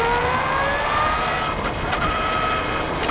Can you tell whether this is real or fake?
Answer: real